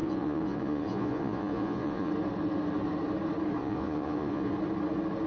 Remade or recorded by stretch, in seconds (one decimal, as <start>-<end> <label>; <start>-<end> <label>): 0.0-2.1 remade; 2.1-3.6 recorded; 3.6-4.5 remade; 4.5-5.3 recorded